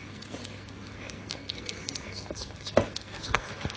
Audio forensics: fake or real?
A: fake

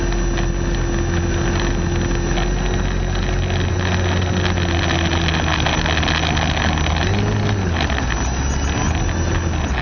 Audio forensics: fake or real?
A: real